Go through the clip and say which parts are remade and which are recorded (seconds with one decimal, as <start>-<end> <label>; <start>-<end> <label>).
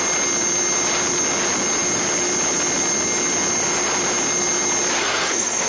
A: 0.0-5.0 recorded; 5.0-5.7 remade